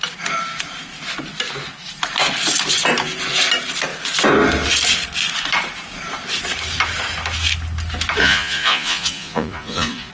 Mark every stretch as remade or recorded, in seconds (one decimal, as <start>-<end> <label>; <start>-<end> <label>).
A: 0.0-8.2 recorded; 8.2-10.1 remade